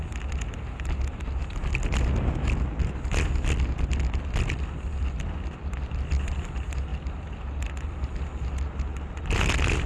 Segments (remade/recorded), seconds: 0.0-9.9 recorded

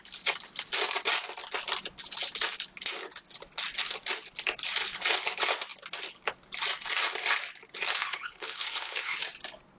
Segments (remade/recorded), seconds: 0.0-7.9 recorded; 7.9-9.2 remade; 9.2-9.8 recorded

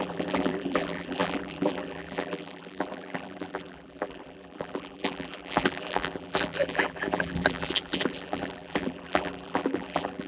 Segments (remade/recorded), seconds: 0.0-10.3 remade

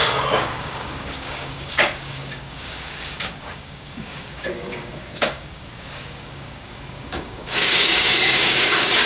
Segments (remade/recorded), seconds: 0.0-9.1 remade